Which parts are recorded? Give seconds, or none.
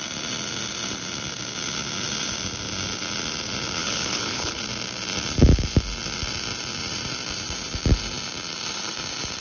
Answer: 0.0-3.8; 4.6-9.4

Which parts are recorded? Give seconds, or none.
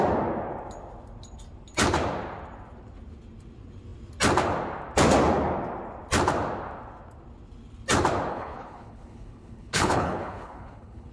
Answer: 0.0-8.3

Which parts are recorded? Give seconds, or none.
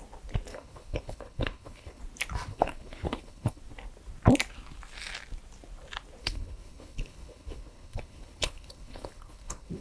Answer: 0.0-0.5; 2.0-2.5; 3.6-6.2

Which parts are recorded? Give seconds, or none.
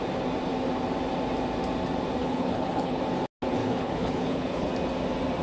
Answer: 0.0-2.2; 3.0-3.6; 4.7-5.4